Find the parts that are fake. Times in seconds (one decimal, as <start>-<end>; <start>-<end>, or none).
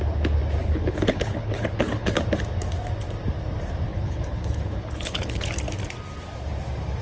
0.6-2.2; 3.9-5.5